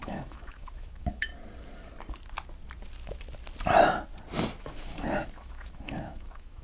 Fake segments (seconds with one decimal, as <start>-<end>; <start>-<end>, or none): 0.0-1.3; 4.6-6.6